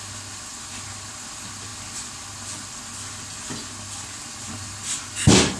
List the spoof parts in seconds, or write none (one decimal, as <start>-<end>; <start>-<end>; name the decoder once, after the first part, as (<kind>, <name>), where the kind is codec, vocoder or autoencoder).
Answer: none